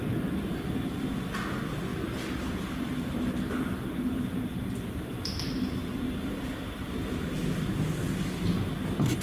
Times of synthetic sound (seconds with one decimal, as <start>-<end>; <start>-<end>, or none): none

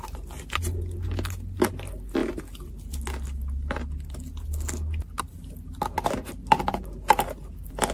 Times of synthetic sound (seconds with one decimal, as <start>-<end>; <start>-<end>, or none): none

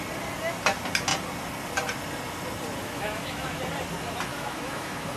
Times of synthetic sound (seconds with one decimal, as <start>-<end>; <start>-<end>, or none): 2.8-3.6; 4.3-5.2

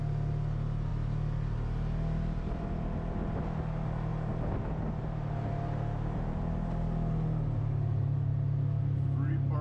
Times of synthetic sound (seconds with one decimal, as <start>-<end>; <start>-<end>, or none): none

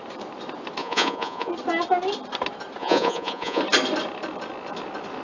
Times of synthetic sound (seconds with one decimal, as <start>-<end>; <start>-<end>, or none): 0.8-1.5; 2.8-3.6